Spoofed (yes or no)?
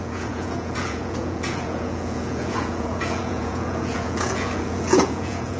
yes